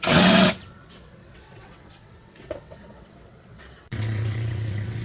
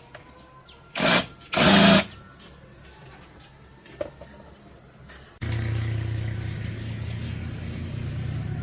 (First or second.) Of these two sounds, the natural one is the second